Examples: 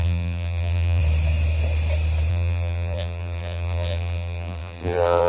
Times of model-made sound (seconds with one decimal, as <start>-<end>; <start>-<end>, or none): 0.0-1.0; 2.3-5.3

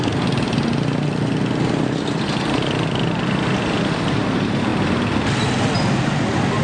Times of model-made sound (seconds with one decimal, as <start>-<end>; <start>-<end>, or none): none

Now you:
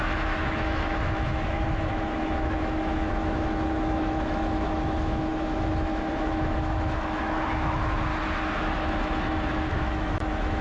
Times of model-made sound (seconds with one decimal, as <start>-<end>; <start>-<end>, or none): 0.0-8.1; 8.6-10.6

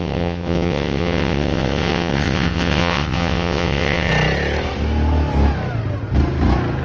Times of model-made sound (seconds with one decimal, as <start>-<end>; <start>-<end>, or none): 0.0-4.1

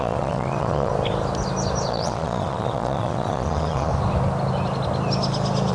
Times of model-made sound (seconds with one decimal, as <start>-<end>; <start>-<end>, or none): 0.0-0.9; 1.9-3.9